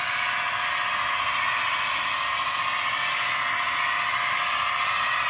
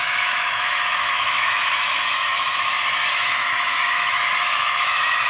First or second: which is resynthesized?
second